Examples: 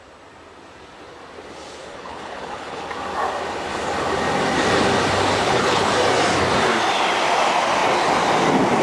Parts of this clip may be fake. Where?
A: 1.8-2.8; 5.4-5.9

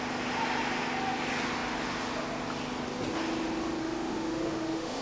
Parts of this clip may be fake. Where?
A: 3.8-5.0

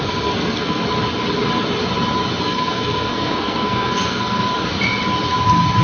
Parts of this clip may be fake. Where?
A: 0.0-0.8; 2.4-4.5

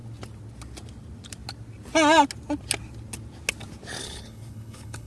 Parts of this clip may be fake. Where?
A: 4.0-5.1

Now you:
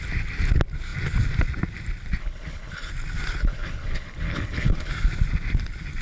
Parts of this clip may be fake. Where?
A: 2.2-2.9; 3.4-4.9

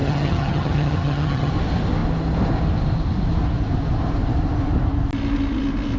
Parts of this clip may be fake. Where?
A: 0.0-1.5